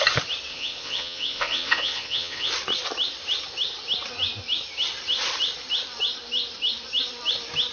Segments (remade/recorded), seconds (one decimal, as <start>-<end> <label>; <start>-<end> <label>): 0.0-0.5 recorded; 0.5-2.5 remade; 2.5-7.7 recorded